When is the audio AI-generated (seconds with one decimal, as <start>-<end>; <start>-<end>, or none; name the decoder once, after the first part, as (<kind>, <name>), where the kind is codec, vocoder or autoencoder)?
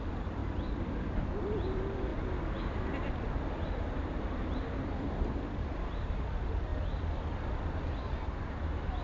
0.0-0.4 (vocoder, BigVGAN v2); 1.4-2.1; 3.8-6.7; 7.9-9.0